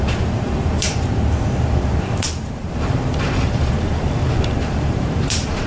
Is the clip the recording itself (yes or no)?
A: no